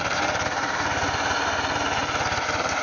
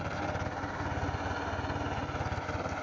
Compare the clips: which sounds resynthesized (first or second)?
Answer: first